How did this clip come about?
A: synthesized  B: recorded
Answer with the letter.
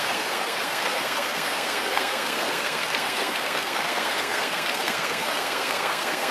A